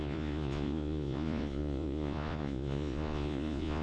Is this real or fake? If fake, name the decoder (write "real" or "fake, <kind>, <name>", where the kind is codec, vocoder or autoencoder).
fake, vocoder, Vocos